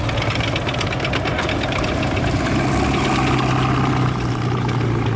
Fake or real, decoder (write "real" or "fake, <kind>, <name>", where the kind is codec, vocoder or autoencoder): real